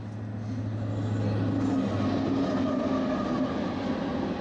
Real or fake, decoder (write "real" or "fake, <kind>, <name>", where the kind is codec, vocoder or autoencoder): real